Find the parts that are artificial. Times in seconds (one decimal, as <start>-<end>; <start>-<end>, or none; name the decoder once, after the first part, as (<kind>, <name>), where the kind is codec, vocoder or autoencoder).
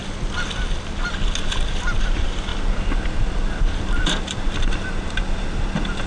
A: none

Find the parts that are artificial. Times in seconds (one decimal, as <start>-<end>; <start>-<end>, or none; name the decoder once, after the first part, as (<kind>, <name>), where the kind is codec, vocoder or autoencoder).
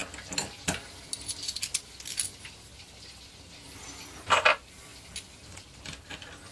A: none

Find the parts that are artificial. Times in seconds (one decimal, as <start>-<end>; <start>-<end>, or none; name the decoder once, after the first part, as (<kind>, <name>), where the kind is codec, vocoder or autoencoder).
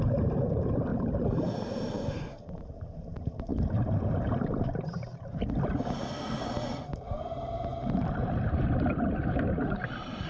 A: 0.0-0.9 (vocoder, BigVGAN v2); 1.6-3.5; 6.4-10.3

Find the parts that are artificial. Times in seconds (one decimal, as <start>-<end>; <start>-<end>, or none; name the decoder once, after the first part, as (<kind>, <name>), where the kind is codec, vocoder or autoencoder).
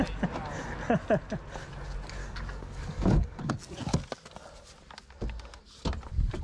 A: 2.2-3.5 (codec, DAC)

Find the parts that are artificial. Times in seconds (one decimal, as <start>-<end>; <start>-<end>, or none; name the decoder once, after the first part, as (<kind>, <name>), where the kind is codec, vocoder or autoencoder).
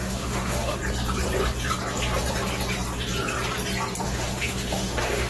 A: 0.0-0.8 (autoencoder, DAC-VAE); 4.0-5.3